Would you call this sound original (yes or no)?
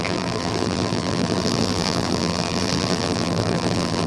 no